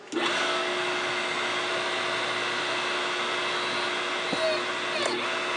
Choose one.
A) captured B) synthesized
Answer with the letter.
A